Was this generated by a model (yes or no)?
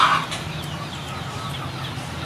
no